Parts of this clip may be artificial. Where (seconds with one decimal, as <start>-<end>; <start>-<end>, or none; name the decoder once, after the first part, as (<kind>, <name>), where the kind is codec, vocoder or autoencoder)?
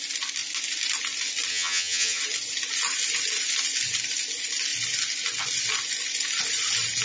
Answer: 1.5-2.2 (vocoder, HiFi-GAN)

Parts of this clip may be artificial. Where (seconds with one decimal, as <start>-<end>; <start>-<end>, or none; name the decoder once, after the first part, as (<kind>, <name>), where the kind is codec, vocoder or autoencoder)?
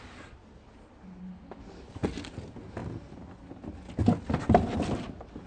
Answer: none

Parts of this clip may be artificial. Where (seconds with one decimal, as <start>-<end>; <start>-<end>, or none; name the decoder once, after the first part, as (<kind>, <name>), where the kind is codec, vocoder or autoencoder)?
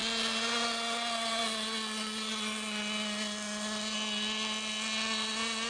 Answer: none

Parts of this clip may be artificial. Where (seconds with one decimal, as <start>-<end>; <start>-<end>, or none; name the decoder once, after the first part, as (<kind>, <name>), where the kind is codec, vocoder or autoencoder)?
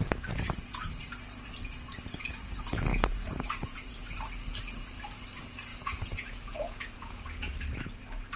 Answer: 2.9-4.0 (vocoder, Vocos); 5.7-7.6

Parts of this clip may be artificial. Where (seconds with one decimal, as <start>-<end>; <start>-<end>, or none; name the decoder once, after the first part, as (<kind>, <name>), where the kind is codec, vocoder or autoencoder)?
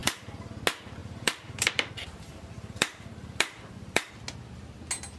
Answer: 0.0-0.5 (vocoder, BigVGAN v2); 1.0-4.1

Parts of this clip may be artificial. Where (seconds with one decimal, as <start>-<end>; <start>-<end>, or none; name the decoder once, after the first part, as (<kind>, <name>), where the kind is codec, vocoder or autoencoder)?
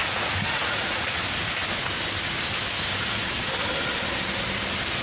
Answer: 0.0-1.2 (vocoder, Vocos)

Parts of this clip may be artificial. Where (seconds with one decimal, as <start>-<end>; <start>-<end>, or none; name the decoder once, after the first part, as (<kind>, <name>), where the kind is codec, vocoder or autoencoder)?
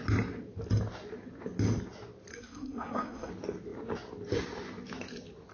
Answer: 2.3-3.3 (codec, SNAC)